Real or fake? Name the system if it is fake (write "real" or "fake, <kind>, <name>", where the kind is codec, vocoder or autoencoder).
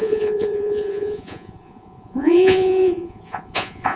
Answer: fake, vocoder, Vocos